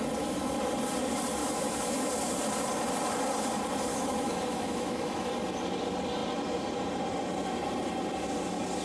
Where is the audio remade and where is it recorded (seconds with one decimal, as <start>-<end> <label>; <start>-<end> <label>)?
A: 0.0-1.4 recorded; 1.4-2.1 remade; 2.1-3.9 recorded; 3.9-5.3 remade; 5.3-8.8 recorded